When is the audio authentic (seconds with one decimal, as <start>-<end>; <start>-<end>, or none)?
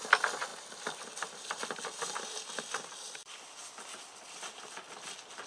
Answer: 0.0-5.5